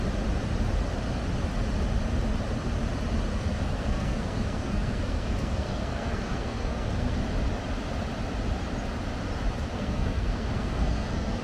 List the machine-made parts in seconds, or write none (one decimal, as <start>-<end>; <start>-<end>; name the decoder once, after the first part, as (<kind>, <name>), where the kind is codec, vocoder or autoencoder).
3.3-7.2 (codec, SNAC); 9.7-11.4